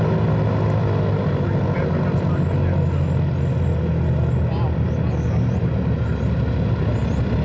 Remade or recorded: recorded